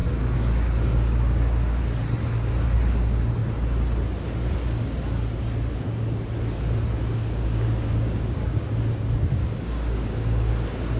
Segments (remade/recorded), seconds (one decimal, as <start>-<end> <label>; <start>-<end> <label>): 0.0-1.8 remade; 1.8-7.1 recorded; 7.1-8.7 remade; 8.7-9.4 recorded; 9.4-10.5 remade; 10.5-11.0 recorded